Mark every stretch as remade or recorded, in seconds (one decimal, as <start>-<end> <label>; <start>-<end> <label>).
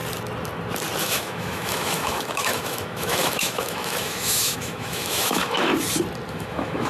0.0-1.0 recorded; 1.0-5.7 remade; 5.7-6.3 recorded; 6.3-6.9 remade